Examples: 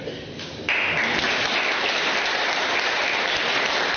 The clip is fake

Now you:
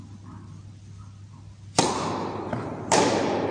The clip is real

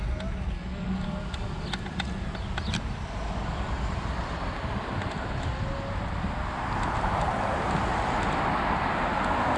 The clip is real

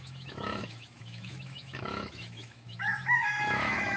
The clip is fake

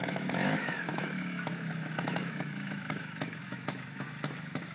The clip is fake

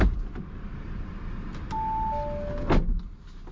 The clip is real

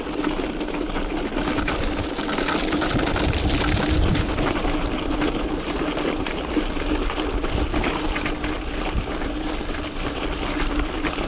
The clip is real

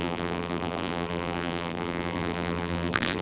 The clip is fake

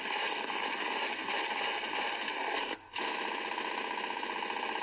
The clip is real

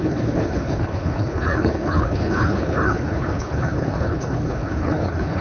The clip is fake